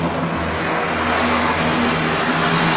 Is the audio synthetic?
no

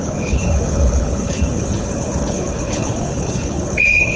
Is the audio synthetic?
yes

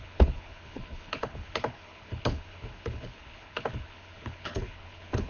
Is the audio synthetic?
yes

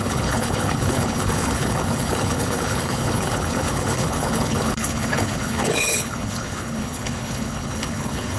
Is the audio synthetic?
yes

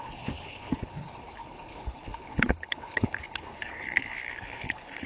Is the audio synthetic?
yes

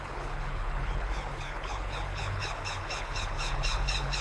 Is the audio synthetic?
yes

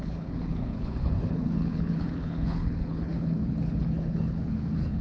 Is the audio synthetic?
yes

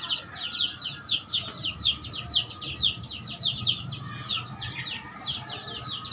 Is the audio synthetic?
no